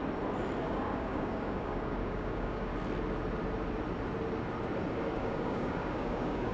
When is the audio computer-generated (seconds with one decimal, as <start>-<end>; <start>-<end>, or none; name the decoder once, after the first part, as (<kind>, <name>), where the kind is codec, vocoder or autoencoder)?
0.6-2.7 (codec, DAC); 5.2-6.5

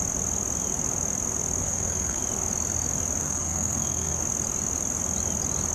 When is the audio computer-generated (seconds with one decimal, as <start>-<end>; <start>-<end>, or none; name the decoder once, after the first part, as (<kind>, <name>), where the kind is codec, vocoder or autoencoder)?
1.6-2.2 (codec, SNAC); 3.2-4.2

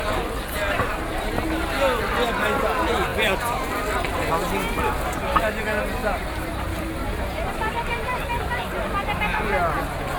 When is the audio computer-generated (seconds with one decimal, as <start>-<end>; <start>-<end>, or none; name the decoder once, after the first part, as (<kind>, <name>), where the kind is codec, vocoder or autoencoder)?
6.0-9.4 (vocoder, BigVGAN v2)

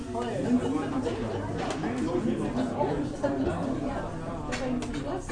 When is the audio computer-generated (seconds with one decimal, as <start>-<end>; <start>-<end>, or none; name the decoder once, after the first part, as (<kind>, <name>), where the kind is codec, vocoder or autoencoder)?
none

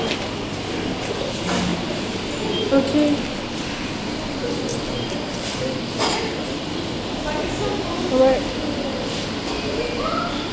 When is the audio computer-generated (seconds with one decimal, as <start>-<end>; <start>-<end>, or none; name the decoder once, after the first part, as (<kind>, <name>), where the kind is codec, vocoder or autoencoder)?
1.7-2.2 (vocoder, BigVGAN v2); 4.7-5.8; 8.9-10.5

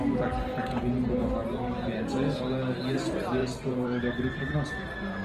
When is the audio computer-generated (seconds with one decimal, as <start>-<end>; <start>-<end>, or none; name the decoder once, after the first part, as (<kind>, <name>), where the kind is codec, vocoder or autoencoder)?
3.4-4.0 (vocoder, BigVGAN v2)

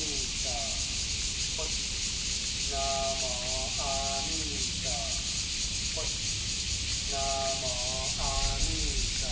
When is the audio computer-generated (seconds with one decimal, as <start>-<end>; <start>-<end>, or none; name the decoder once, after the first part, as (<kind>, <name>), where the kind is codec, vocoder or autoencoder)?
none

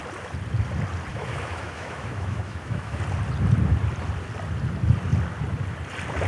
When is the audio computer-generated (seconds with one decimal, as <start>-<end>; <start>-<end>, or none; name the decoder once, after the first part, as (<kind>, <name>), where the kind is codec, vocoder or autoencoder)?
1.1-3.0 (autoencoder, DAC-VAE)